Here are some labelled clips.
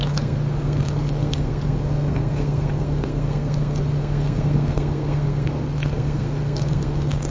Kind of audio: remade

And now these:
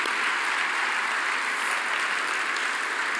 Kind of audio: recorded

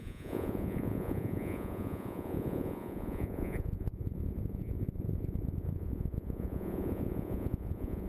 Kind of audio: remade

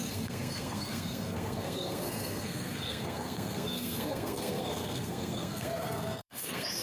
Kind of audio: remade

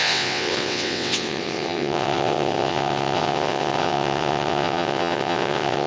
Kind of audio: remade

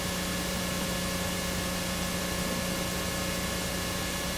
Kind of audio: recorded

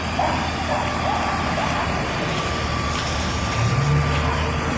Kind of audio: recorded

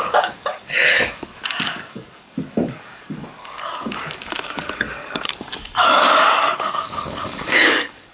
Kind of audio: remade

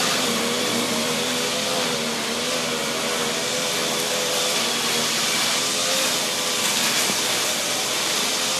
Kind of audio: remade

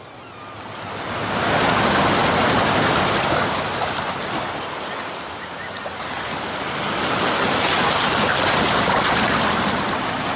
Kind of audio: recorded